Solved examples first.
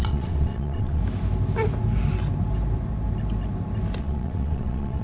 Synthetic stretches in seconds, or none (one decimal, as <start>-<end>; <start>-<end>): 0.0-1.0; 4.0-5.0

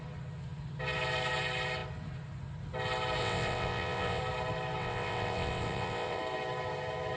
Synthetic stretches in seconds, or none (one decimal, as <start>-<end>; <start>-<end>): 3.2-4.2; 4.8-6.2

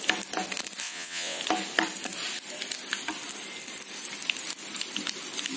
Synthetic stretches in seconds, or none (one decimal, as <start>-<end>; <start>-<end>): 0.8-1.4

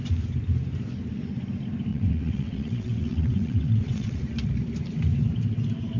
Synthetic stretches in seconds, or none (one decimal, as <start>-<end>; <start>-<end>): 1.9-4.2

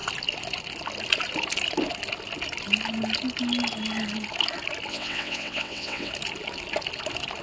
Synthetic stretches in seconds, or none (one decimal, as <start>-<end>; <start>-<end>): 4.9-6.1